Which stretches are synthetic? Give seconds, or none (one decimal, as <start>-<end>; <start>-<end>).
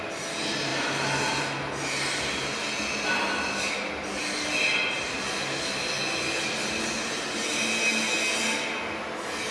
none